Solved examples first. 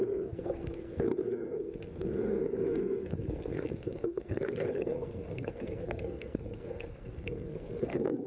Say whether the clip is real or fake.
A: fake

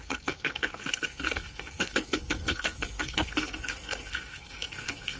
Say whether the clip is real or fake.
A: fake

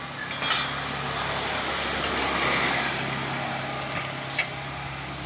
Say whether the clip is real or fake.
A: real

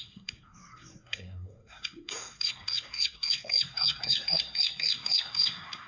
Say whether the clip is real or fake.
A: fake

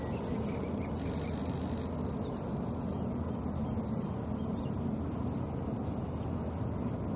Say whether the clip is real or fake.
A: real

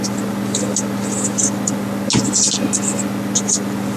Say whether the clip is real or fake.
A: real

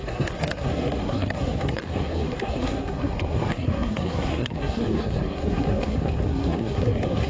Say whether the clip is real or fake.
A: fake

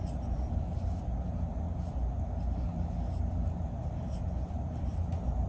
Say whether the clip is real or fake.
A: real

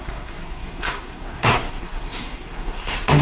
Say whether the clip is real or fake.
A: fake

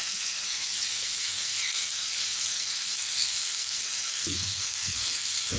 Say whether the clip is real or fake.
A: fake